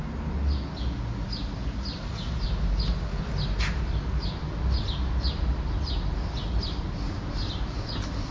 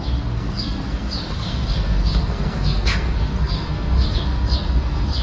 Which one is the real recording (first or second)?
first